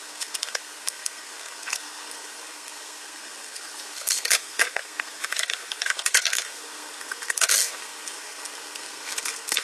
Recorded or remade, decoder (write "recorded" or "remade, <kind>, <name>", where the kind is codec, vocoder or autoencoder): remade, codec, SNAC